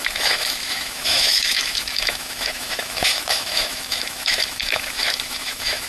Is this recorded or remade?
remade